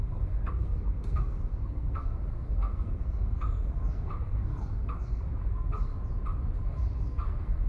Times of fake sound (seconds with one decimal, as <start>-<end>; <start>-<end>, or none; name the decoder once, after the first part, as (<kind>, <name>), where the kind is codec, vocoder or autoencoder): 0.0-5.9 (codec, SNAC); 6.6-7.7